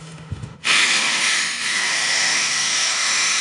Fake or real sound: fake